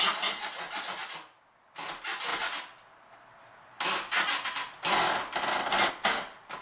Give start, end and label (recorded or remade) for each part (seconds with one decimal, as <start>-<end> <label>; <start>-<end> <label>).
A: 0.0-6.6 recorded